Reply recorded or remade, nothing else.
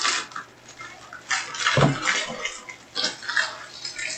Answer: recorded